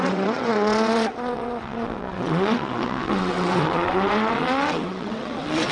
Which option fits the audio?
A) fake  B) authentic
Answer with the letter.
A